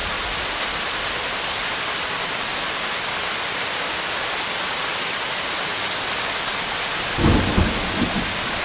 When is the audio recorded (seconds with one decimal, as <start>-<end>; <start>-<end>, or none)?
0.0-8.6